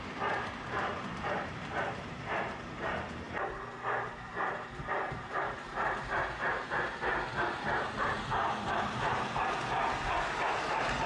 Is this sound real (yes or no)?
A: no